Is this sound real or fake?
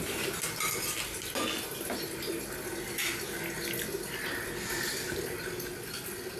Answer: real